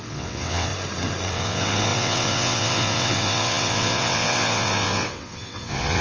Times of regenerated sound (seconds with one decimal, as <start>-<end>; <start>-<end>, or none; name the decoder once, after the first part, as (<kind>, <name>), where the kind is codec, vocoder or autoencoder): 0.0-0.7 (vocoder, WaveNeXt); 1.3-6.0